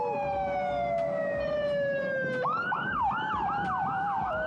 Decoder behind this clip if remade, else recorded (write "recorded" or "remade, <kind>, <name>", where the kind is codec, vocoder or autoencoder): recorded